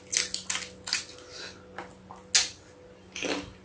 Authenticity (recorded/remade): recorded